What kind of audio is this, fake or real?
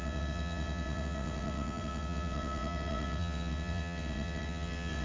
fake